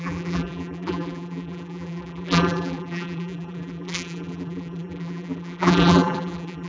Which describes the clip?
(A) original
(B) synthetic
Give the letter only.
B